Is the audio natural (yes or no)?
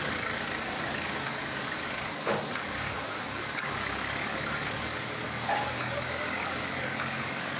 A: no